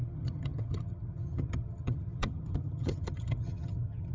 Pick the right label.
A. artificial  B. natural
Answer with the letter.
A